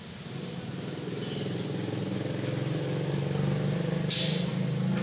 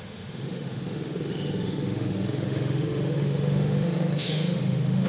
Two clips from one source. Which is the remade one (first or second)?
second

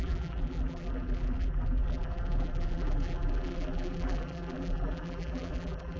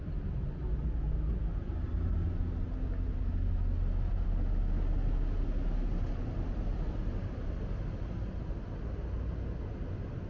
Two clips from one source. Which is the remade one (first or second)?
first